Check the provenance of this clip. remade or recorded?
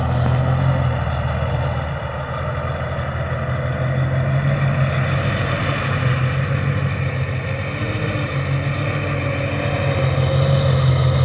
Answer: recorded